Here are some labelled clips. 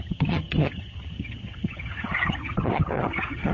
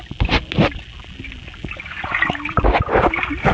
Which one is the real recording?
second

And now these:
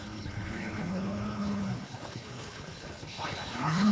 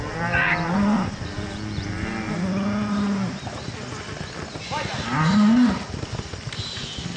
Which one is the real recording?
second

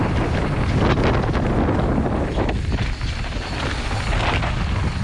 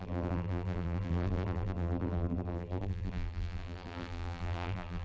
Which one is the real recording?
first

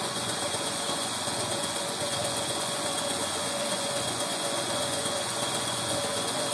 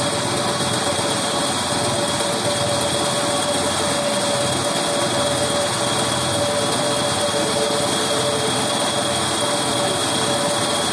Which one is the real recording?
second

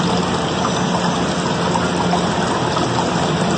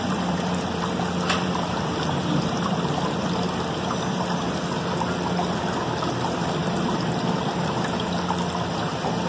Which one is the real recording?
first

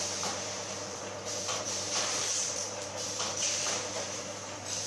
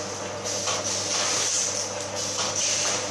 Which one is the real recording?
second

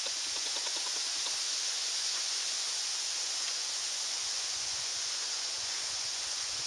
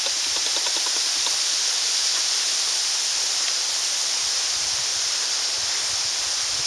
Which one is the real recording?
second